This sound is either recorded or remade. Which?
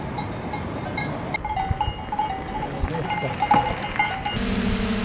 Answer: recorded